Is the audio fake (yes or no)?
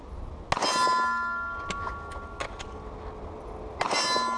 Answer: no